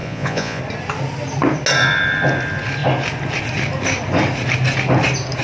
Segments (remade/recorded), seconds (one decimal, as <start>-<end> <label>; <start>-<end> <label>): 0.0-0.6 remade; 0.6-5.4 recorded